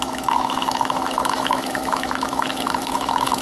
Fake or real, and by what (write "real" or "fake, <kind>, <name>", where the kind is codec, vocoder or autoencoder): fake, autoencoder, DAC-VAE